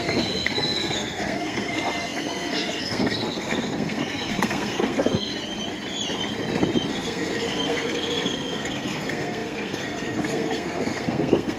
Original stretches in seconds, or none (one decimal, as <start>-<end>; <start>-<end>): 5.3-6.9